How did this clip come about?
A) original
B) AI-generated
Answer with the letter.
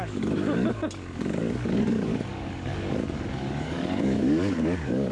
B